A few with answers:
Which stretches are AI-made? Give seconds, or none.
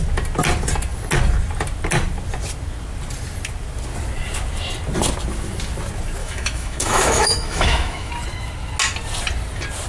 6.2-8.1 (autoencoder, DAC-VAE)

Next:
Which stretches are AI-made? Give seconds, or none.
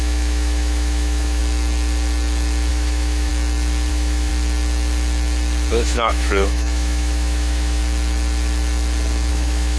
0.0-1.4 (autoencoder, DAC-VAE); 2.7-3.3; 3.9-4.3; 5.7-7.8; 9.3-9.8